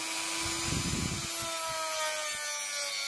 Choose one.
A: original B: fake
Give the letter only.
A